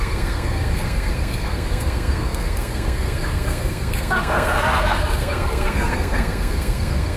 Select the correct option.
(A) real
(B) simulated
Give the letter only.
B